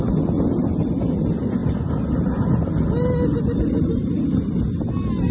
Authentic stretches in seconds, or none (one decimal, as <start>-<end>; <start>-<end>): 0.0-5.3